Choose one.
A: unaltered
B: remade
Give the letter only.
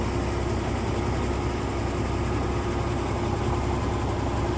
A